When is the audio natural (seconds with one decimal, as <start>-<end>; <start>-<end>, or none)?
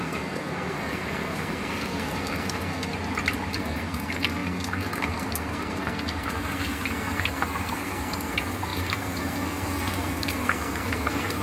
2.9-3.5